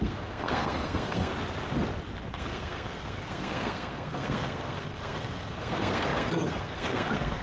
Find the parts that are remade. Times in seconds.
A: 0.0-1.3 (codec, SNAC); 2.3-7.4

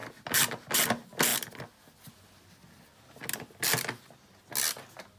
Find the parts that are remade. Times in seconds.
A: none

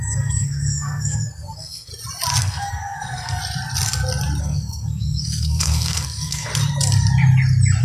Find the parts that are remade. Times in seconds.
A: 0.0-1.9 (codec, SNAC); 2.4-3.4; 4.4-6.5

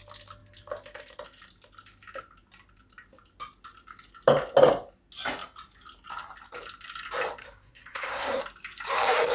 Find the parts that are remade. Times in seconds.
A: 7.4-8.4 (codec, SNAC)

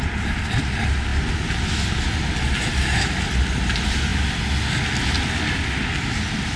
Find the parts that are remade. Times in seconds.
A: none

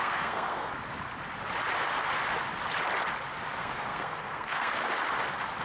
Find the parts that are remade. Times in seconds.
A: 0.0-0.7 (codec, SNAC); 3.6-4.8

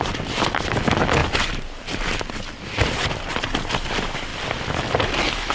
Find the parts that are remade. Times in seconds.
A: none